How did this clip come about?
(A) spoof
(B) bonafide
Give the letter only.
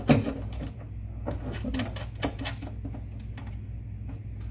B